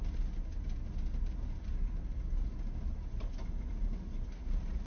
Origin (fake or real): real